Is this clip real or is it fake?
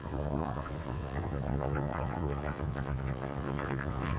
fake